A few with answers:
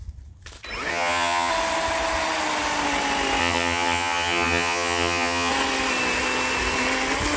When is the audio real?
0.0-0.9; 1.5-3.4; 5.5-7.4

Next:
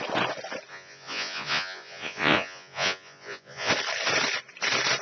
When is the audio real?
0.0-0.7; 3.7-5.0

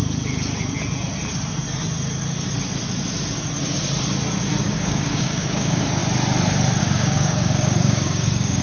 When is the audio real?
0.0-4.6; 6.0-6.8

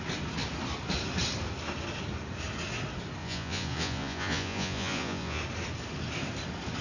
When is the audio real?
0.0-3.2; 5.4-6.8

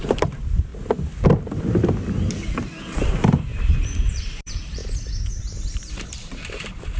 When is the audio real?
0.7-2.7; 4.8-5.9

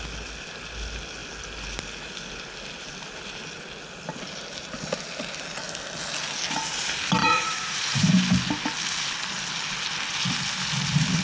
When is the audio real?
0.0-7.2; 8.1-11.2

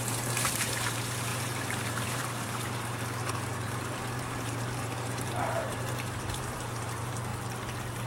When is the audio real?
7.3-8.1